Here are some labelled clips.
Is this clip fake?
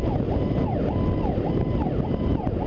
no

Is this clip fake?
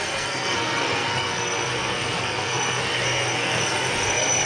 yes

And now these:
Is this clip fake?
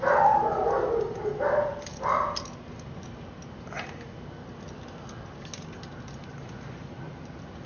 no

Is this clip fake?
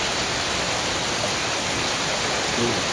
no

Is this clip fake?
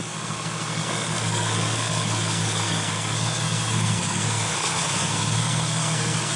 yes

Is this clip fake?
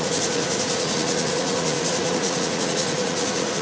yes